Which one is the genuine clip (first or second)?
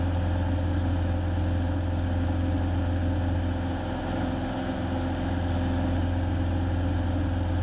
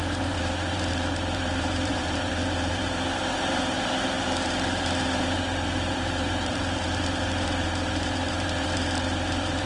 first